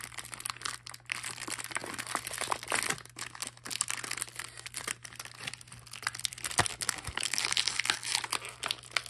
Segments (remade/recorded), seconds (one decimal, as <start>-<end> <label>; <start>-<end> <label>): 0.0-6.7 recorded; 6.7-7.4 remade; 7.4-9.1 recorded